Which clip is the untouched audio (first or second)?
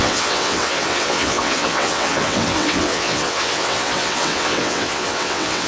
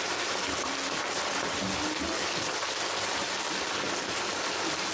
second